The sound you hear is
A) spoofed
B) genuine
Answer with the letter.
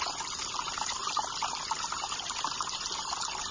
B